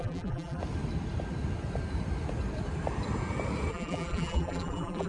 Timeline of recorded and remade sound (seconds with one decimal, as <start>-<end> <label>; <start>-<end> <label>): 0.0-0.6 remade; 0.6-3.7 recorded; 3.7-5.1 remade